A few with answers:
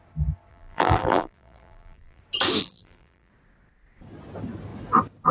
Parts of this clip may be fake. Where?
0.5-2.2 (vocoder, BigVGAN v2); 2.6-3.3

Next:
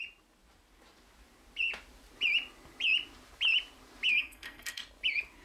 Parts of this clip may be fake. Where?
4.1-4.8 (codec, SNAC)

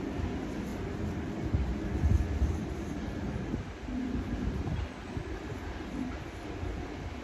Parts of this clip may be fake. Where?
0.7-5.0 (vocoder, BigVGAN v2)

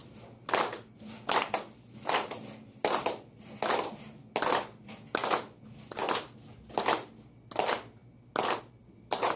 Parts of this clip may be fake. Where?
none

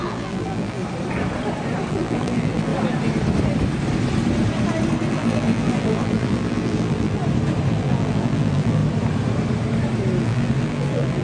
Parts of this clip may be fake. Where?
0.0-0.8 (vocoder, BigVGAN v2); 1.9-2.7; 5.1-7.2; 7.7-8.8; 10.2-11.2

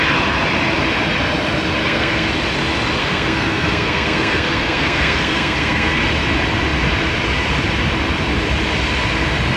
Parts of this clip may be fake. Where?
1.8-2.3 (codec, SNAC); 3.0-6.0